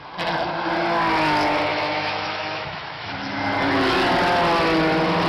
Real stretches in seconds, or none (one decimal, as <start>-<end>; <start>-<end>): 0.0-1.7; 3.1-5.3